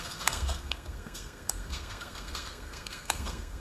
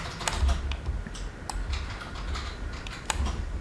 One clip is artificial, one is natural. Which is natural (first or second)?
second